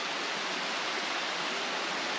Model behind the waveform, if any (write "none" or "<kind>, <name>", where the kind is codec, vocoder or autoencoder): none